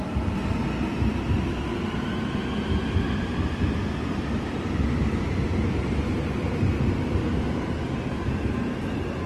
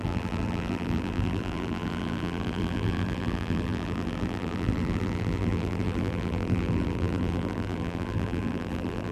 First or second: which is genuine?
first